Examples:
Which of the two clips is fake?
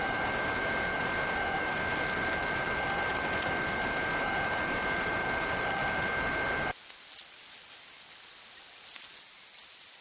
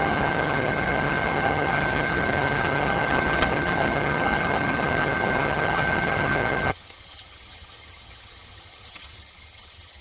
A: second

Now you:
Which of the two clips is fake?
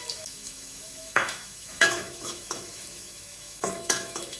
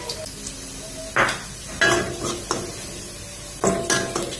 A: first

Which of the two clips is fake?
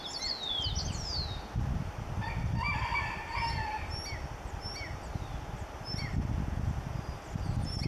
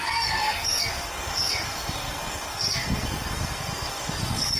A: second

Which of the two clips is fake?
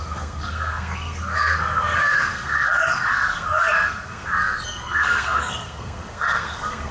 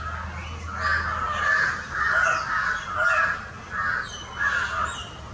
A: first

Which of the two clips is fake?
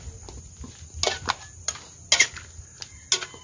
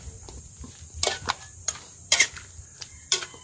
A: second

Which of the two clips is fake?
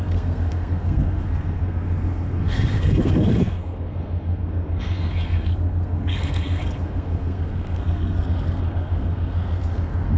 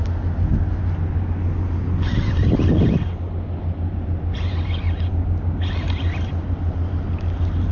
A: first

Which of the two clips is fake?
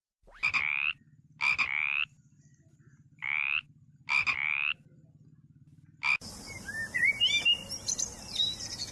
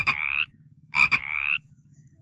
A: second